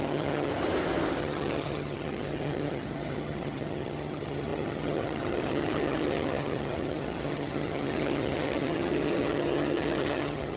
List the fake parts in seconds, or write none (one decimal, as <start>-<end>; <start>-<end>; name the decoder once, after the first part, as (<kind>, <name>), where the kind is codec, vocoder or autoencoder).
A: 0.0-0.5 (vocoder, HiFi-GAN); 1.2-10.6